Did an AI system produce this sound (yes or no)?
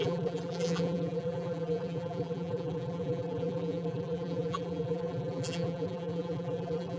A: yes